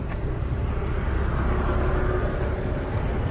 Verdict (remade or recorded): recorded